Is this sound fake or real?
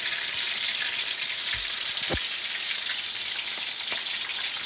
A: real